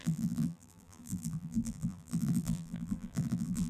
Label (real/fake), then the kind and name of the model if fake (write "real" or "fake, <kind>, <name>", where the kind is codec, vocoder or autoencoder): fake, vocoder, BigVGAN v2